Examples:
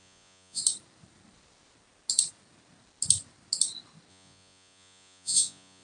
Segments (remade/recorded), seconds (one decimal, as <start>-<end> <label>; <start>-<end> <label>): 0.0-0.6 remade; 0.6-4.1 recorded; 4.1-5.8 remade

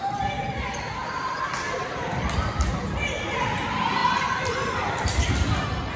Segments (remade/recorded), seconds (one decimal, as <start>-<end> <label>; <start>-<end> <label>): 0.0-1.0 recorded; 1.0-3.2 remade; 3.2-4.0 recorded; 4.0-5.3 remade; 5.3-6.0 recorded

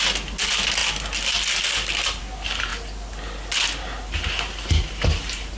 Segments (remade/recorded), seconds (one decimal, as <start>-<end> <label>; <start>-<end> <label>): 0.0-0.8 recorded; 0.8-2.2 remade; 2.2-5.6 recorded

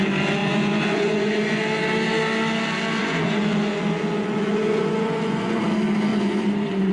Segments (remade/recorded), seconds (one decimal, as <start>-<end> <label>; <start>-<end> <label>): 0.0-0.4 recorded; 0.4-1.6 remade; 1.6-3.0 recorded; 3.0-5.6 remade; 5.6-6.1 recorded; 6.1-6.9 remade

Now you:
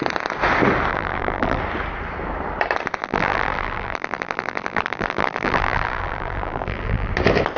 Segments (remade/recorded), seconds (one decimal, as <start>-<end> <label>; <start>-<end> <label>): 0.0-0.9 recorded; 0.9-1.6 remade; 1.6-3.0 recorded; 3.0-7.1 remade; 7.1-7.6 recorded

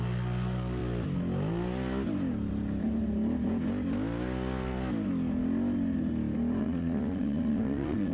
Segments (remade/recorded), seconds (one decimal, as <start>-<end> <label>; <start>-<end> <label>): 0.0-6.6 recorded; 6.6-8.1 remade

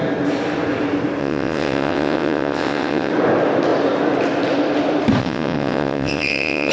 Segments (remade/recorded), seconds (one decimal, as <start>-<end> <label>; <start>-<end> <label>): 0.0-1.2 recorded; 1.2-3.1 remade; 3.1-5.2 recorded; 5.2-6.7 remade